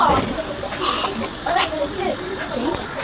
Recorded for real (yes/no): yes